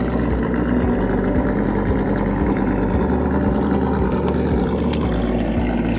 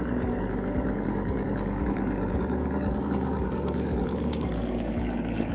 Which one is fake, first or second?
second